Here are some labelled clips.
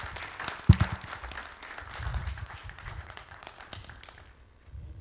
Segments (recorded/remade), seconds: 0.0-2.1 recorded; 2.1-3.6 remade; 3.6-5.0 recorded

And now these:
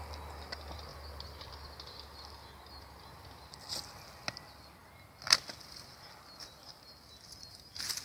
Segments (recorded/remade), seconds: 0.0-8.0 recorded

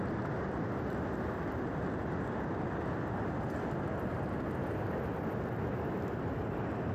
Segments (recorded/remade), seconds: 0.0-6.9 recorded

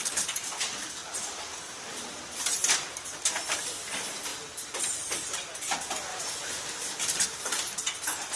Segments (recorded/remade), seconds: 0.0-6.1 recorded; 6.1-7.6 remade; 7.6-8.4 recorded

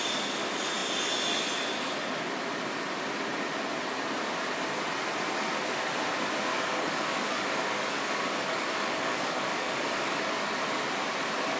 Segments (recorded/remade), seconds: 0.0-6.5 recorded; 6.5-10.2 remade; 10.2-11.6 recorded

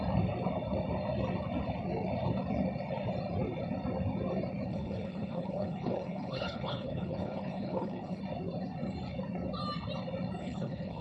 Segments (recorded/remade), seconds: 0.0-4.7 recorded; 4.7-8.2 remade; 8.2-10.4 recorded; 10.4-11.0 remade

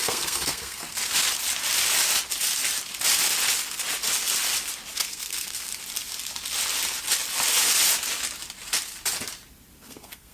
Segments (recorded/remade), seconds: 0.0-0.9 remade; 0.9-4.9 recorded; 4.9-5.7 remade; 5.7-9.8 recorded; 9.8-10.3 remade

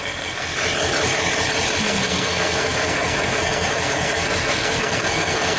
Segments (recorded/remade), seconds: 0.0-0.5 remade; 0.5-1.8 recorded; 1.8-5.6 remade